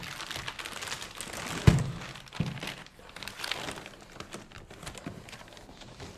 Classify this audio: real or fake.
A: real